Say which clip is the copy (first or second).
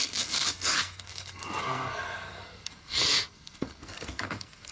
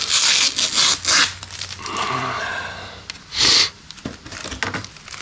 first